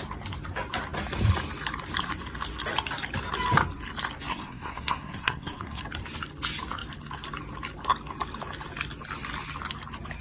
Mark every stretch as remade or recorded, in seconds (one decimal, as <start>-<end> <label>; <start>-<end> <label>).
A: 0.0-4.3 recorded; 4.3-5.8 remade; 5.8-10.2 recorded